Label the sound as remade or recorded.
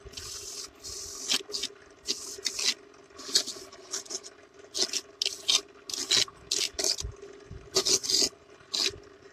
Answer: recorded